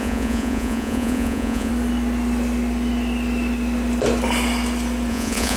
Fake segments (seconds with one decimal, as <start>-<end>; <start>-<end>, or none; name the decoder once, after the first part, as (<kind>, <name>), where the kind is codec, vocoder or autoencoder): 0.0-1.7 (vocoder, Vocos); 5.1-5.6